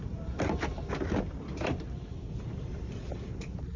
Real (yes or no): yes